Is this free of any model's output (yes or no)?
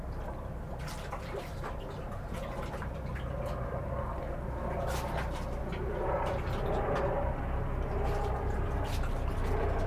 yes